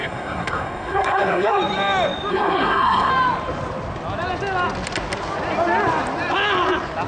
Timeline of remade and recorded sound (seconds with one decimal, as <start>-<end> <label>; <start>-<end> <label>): 0.0-1.6 remade; 1.6-2.3 recorded; 2.3-3.1 remade; 3.1-7.1 recorded